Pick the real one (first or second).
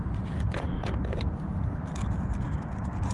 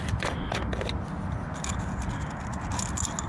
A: second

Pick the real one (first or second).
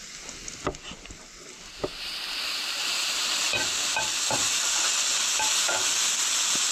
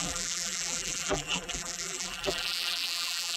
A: first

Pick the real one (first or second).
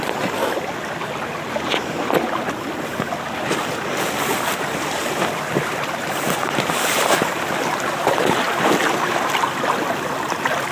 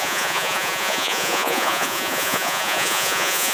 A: first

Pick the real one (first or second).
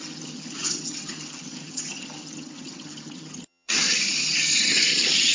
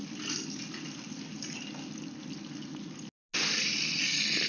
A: second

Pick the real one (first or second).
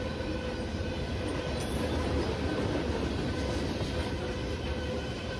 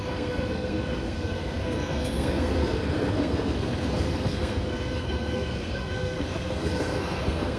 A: first